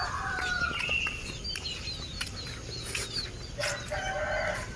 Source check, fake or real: real